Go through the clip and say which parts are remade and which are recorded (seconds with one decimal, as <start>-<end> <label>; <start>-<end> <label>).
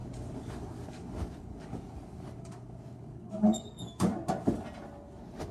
0.0-4.1 remade; 4.1-5.5 recorded